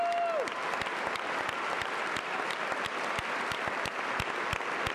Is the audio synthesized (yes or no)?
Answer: no